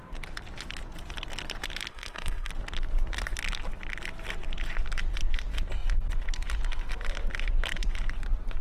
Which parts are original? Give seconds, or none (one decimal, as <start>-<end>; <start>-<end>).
0.0-1.9; 2.5-8.6

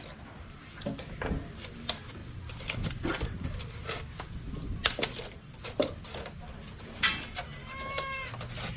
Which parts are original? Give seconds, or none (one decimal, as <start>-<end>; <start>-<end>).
0.0-7.6; 8.3-8.8